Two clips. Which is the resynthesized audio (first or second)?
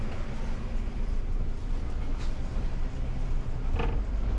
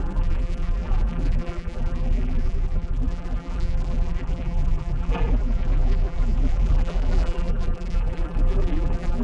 second